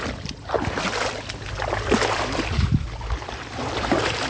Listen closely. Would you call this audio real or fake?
fake